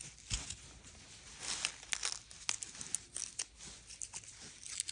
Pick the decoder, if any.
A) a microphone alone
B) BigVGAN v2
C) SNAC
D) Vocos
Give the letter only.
A